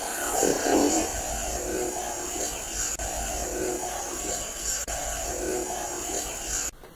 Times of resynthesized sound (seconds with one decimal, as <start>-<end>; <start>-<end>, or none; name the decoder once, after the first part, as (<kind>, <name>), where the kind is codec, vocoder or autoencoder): 3.9-5.3 (codec, SNAC)